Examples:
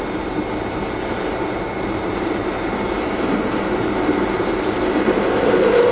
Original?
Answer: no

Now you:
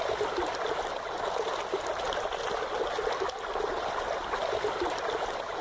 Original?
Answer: yes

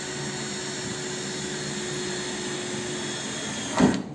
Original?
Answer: yes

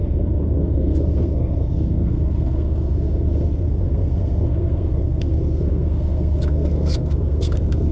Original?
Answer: no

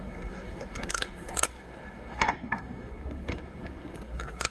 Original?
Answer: no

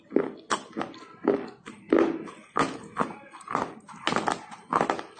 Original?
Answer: yes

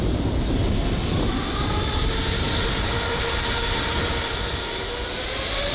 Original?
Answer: yes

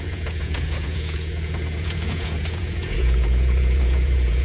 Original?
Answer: no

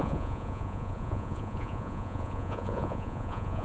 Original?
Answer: no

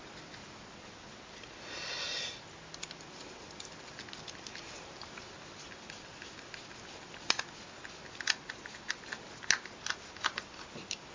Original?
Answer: yes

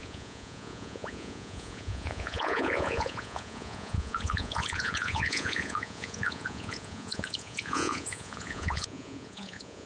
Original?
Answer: no